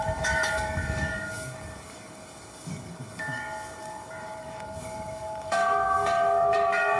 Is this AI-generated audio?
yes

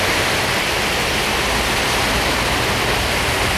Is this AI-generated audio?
no